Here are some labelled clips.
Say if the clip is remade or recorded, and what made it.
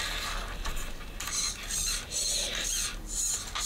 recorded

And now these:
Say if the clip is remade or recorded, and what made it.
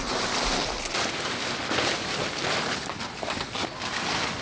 recorded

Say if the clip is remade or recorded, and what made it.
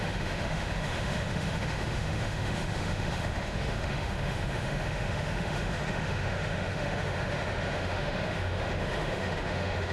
remade, autoencoder, DAC-VAE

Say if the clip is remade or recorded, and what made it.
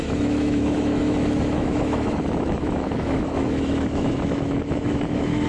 remade, autoencoder, DAC-VAE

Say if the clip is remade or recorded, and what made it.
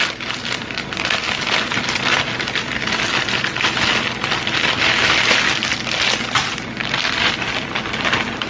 recorded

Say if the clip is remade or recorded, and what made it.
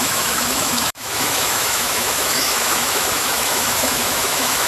remade, autoencoder, DAC-VAE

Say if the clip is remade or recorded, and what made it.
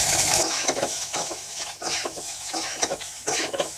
remade, autoencoder, DAC-VAE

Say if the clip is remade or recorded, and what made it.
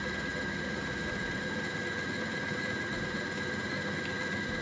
recorded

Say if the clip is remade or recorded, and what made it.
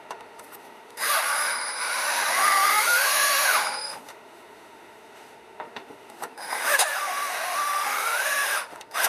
remade, autoencoder, DAC-VAE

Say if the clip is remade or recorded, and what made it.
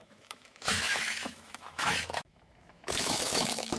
remade, autoencoder, DAC-VAE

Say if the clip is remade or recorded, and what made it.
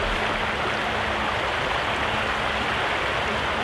recorded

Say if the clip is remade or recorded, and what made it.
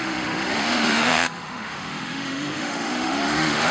remade, autoencoder, DAC-VAE